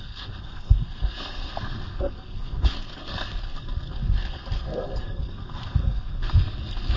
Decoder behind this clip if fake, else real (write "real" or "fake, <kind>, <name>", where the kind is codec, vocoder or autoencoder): fake, codec, SNAC